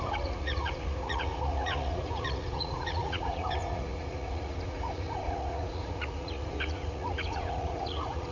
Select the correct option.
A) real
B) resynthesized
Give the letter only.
B